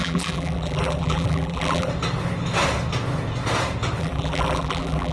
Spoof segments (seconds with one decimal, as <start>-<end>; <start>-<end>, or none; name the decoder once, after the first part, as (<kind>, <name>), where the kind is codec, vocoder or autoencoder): 0.0-1.9 (vocoder, BigVGAN v2); 4.0-5.1